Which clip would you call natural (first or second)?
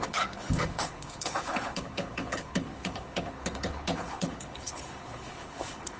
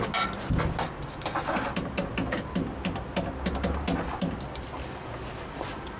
second